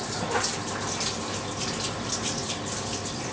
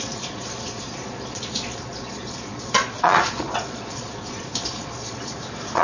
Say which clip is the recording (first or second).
first